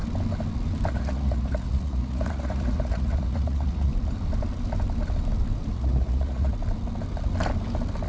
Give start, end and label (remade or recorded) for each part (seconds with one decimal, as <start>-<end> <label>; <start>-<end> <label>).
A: 0.0-0.9 recorded; 0.9-3.9 remade; 3.9-5.7 recorded; 5.7-6.5 remade; 6.5-8.1 recorded